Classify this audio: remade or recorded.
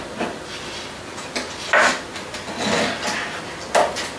recorded